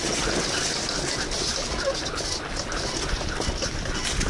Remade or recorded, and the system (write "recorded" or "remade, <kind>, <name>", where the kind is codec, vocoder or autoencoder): recorded